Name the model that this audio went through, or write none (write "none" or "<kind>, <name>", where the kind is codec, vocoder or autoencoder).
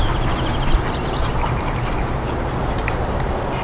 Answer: vocoder, BigVGAN v2